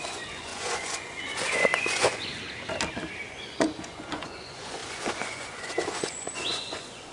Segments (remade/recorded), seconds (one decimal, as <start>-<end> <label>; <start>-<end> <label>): 0.0-2.3 remade; 2.3-3.3 recorded; 3.3-7.1 remade